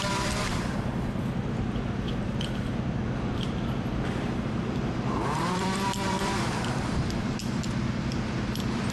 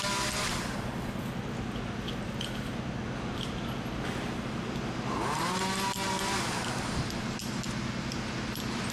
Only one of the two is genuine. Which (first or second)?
second